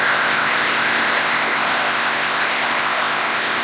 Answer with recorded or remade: remade